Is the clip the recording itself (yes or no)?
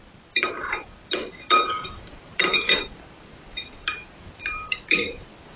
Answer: no